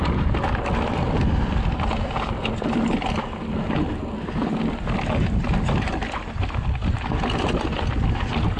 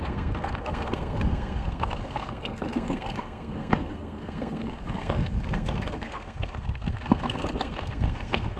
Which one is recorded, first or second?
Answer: first